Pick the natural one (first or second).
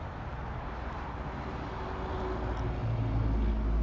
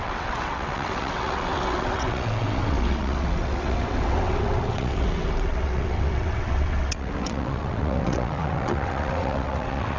first